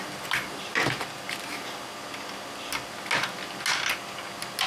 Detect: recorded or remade recorded